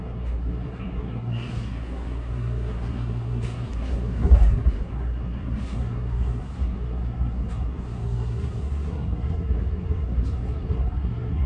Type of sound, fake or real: fake